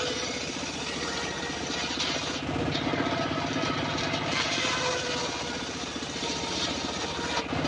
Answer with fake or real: real